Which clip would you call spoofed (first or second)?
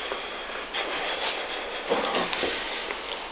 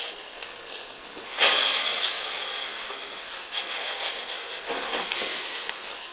second